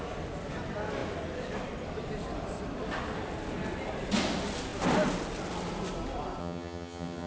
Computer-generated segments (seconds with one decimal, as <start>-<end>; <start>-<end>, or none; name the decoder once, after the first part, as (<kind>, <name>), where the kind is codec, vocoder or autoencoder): 6.4-7.3 (vocoder, HiFi-GAN)